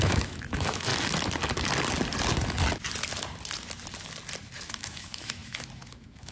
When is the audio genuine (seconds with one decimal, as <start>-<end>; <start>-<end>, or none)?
0.9-4.7